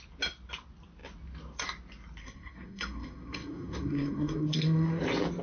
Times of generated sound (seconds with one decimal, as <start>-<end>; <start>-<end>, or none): 2.2-5.0

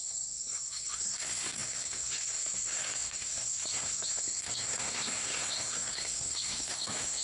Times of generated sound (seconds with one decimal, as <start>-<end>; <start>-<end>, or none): 0.0-7.2

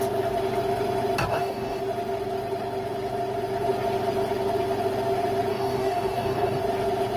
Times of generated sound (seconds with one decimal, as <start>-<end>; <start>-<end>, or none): 1.3-1.8; 5.5-6.6

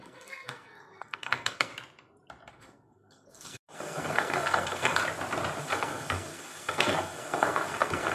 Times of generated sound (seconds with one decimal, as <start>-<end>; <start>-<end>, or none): 0.0-1.7; 2.5-5.0; 5.6-8.1

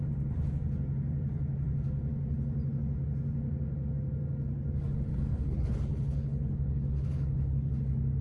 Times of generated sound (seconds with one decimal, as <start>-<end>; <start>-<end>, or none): 5.1-7.7